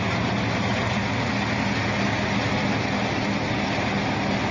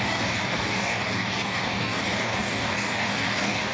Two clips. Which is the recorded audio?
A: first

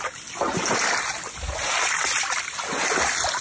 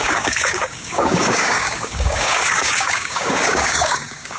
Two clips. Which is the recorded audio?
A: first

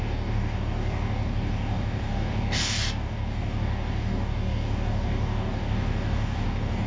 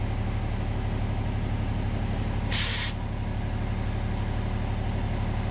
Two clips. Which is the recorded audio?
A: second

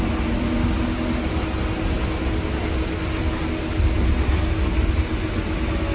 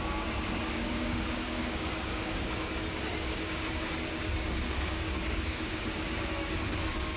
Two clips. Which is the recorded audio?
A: first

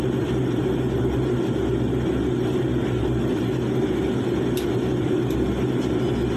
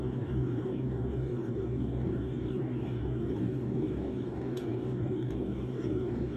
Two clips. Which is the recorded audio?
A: first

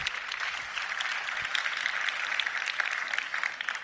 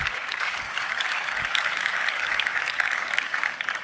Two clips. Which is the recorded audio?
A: first